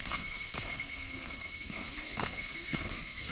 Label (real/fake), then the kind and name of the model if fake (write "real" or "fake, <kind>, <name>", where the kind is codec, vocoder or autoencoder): fake, codec, SNAC